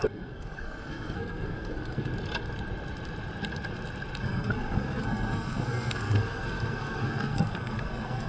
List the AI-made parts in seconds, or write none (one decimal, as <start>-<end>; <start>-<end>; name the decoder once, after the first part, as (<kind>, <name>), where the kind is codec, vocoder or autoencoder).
0.0-2.1 (codec, SNAC); 4.2-8.3